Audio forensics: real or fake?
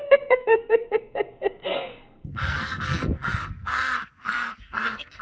fake